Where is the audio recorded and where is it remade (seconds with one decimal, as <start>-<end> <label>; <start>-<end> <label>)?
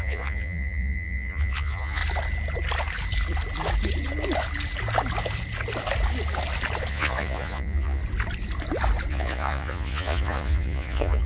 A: 0.0-2.0 remade; 2.0-6.9 recorded; 6.9-8.0 remade; 8.0-9.1 recorded; 9.1-11.3 remade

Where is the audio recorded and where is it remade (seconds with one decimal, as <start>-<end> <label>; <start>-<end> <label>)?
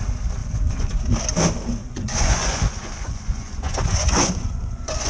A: 0.0-0.4 recorded; 0.4-1.1 remade; 1.1-1.8 recorded; 1.8-5.1 remade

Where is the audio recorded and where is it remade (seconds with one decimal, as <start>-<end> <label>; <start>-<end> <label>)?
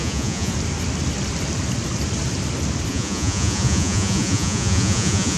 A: 0.0-0.5 remade; 0.5-2.9 recorded; 2.9-5.4 remade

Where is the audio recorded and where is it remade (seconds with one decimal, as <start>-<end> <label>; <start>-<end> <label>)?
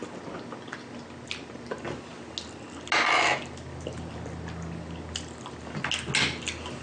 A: 0.0-6.8 recorded